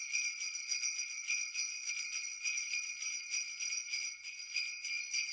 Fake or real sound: real